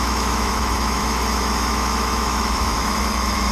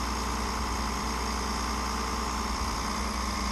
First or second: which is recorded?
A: second